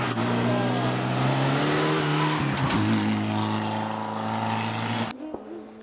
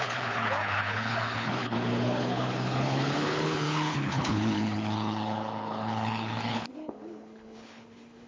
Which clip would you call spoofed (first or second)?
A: second